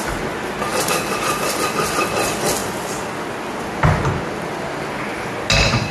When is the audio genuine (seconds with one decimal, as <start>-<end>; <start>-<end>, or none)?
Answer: 0.0-5.9